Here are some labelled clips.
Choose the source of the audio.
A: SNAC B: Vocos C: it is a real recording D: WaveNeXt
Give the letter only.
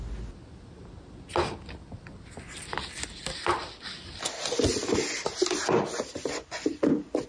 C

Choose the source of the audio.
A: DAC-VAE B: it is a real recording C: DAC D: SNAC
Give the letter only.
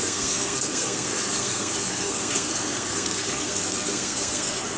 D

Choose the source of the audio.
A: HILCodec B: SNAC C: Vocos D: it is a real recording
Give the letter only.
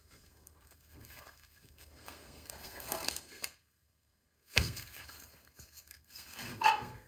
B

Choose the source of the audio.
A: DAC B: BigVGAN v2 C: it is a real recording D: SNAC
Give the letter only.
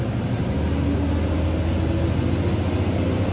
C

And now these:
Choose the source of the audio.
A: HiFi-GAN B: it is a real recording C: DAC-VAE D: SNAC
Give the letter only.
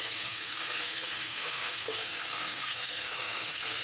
D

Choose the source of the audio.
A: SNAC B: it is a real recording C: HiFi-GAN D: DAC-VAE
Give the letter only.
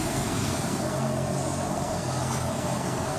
A